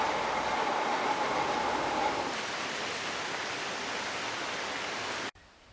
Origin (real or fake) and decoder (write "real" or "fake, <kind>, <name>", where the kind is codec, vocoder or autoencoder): real